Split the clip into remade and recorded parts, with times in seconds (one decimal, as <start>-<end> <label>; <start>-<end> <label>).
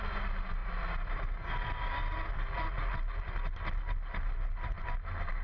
0.0-5.4 recorded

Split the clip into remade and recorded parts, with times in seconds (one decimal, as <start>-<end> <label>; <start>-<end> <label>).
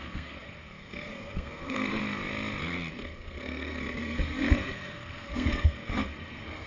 0.0-2.0 remade; 2.0-2.9 recorded; 2.9-6.7 remade